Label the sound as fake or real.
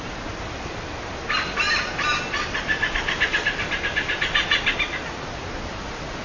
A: real